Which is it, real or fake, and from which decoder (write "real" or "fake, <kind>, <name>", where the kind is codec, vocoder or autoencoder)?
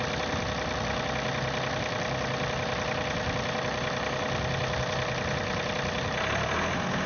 real